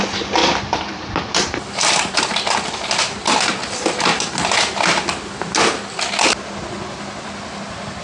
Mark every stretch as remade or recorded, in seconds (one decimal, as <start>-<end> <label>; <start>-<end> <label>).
0.0-0.4 recorded; 0.4-2.2 remade; 2.2-8.0 recorded